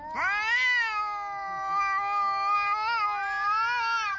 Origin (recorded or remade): recorded